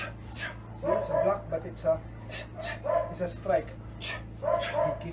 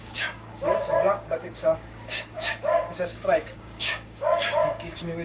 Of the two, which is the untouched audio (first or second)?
first